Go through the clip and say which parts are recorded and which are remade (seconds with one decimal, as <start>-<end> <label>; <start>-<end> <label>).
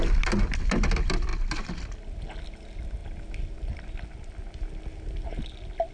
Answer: 0.0-5.9 recorded